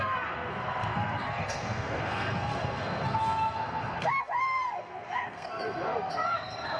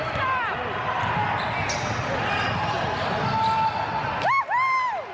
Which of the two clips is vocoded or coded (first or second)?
first